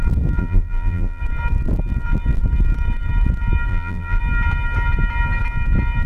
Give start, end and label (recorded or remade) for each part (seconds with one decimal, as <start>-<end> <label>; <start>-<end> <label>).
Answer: 0.0-0.4 recorded; 0.4-1.2 remade; 1.2-3.7 recorded; 3.7-4.2 remade; 4.2-6.1 recorded